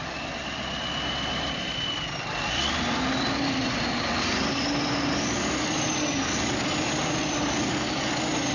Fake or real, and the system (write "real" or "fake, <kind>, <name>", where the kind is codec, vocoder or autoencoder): real